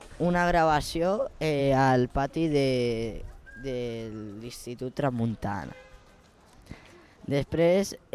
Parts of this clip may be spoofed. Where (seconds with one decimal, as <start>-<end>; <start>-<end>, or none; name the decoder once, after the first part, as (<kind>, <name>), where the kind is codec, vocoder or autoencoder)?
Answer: 1.6-2.1 (vocoder, BigVGAN v2); 4.6-6.2